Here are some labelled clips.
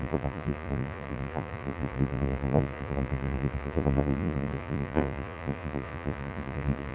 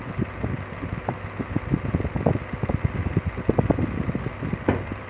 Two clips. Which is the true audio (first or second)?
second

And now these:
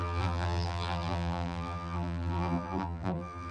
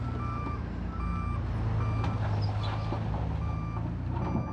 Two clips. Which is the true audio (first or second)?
second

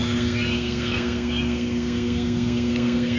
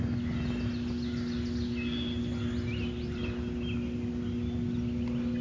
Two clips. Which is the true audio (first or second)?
second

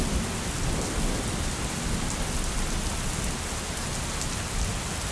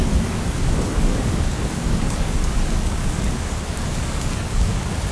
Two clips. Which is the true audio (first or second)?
first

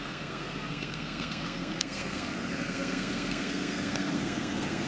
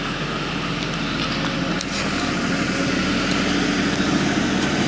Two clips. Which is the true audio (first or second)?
second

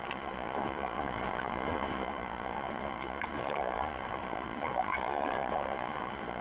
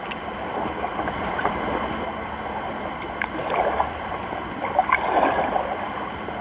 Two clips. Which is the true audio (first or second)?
second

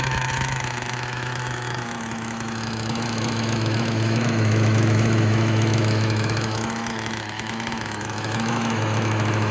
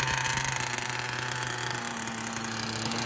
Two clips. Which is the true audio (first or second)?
second